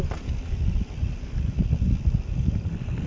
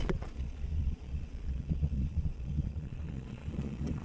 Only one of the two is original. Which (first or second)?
first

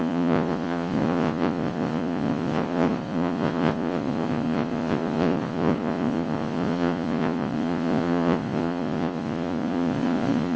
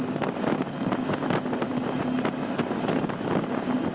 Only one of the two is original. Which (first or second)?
second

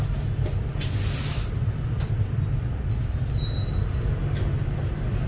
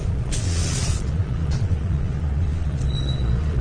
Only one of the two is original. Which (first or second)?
first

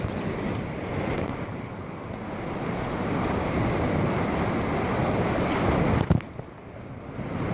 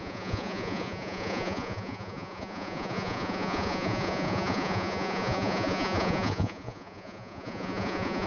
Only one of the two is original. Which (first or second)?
first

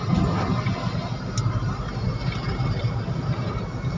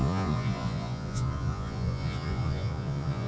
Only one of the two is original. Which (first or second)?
first